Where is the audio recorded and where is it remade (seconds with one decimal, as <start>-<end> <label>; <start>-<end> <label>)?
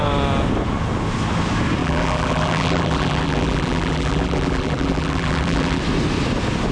0.0-1.8 recorded; 1.8-5.8 remade; 5.8-6.7 recorded